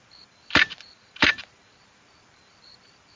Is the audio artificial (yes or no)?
yes